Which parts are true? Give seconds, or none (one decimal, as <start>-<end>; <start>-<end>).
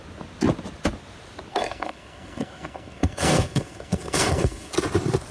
0.0-1.5; 4.7-5.3